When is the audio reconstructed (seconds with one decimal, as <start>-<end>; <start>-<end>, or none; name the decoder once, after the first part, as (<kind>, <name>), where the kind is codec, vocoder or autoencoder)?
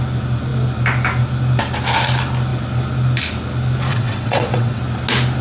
3.9-4.8 (vocoder, WaveNeXt)